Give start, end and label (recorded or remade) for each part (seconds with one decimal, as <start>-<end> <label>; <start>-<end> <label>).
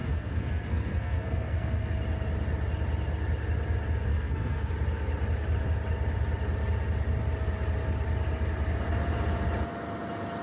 0.0-1.9 remade; 1.9-4.1 recorded; 4.1-4.7 remade; 4.7-10.4 recorded